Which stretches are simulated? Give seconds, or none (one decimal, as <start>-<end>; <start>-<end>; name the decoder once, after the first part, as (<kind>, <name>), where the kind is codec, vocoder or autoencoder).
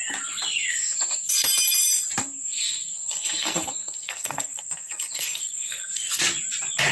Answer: 0.7-1.3 (codec, SNAC); 2.2-6.2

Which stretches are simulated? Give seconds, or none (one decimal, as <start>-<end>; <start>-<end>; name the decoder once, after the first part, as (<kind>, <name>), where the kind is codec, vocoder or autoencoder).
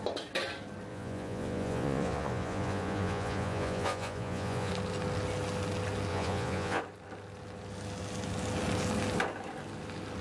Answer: 0.9-4.7 (vocoder, Vocos); 6.1-6.8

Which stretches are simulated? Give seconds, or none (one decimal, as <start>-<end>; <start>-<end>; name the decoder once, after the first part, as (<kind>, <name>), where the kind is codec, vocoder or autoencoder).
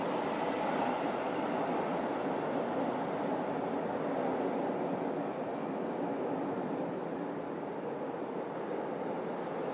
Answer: none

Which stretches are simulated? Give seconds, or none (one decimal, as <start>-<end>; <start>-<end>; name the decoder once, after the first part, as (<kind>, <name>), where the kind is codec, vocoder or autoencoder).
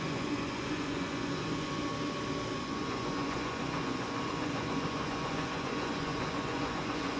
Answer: 0.0-1.9 (vocoder, Vocos); 2.5-7.2